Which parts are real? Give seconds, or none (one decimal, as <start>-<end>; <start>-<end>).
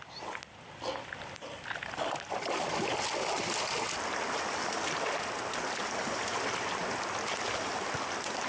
0.0-8.5